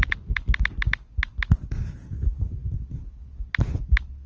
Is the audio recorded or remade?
recorded